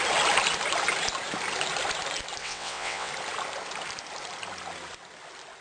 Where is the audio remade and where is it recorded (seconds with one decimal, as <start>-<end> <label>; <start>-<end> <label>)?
0.0-2.4 recorded; 2.4-3.1 remade; 3.1-5.6 recorded